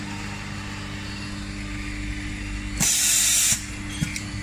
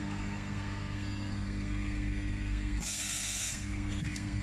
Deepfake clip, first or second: second